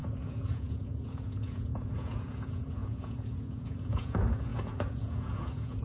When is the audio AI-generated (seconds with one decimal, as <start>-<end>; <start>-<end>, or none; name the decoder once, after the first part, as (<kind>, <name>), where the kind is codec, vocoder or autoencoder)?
0.0-5.8 (vocoder, Vocos)